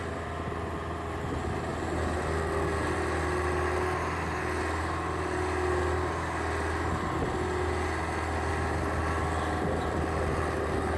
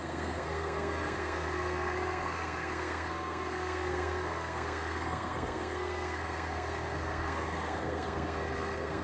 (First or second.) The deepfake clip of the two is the second